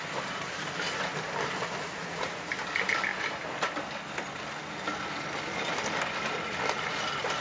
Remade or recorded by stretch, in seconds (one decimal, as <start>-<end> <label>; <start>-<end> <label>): 0.0-2.0 recorded; 2.0-2.5 remade; 2.5-7.4 recorded